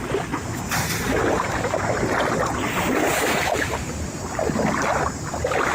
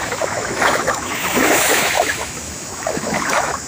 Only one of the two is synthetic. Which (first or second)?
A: second